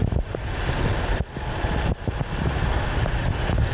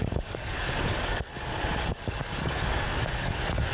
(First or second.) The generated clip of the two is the second